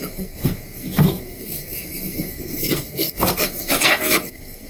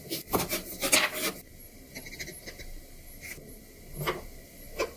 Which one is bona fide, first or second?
second